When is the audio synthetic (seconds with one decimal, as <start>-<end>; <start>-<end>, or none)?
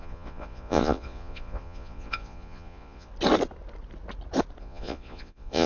0.0-3.1; 4.6-5.7